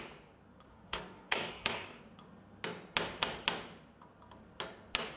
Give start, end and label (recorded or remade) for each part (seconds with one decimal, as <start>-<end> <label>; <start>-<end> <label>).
0.0-0.7 recorded; 0.7-2.0 remade; 2.0-5.2 recorded